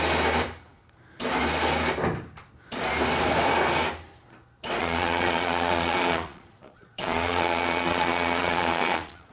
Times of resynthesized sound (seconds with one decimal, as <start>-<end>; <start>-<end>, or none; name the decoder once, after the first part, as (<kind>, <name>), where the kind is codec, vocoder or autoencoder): 4.8-9.3 (vocoder, Vocos)